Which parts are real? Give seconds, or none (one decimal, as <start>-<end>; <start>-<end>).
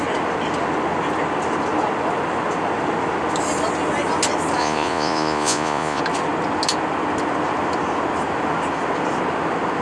0.0-4.6; 6.0-9.8